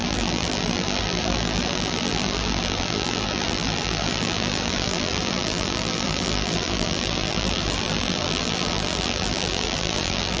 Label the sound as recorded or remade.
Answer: remade